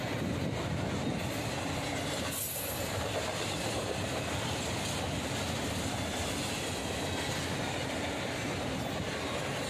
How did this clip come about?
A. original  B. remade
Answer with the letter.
A